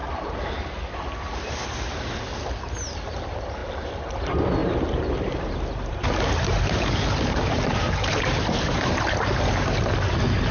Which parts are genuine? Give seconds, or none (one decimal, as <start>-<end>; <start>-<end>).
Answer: 0.6-4.6; 9.2-10.5